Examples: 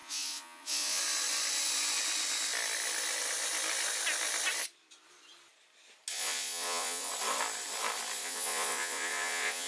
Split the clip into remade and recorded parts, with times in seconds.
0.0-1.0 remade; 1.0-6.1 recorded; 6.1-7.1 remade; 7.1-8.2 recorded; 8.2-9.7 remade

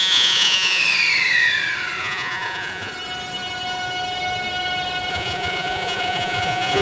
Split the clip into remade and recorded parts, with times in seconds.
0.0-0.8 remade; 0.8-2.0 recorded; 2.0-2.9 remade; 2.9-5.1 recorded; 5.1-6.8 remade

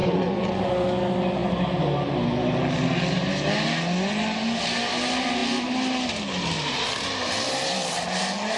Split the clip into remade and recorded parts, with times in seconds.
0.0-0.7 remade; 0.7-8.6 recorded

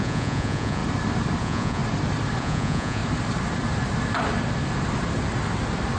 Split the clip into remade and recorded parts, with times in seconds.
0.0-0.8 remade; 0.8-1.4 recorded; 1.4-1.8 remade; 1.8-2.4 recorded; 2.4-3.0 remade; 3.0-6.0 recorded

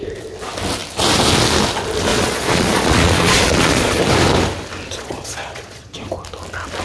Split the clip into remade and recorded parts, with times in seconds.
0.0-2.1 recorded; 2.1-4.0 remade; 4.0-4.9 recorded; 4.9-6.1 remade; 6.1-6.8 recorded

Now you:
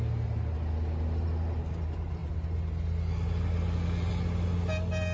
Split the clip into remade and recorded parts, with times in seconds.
0.0-5.1 recorded

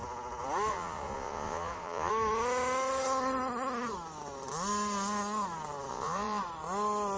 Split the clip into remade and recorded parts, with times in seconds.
0.0-0.7 recorded; 0.7-2.1 remade; 2.1-5.9 recorded; 5.9-6.4 remade; 6.4-7.2 recorded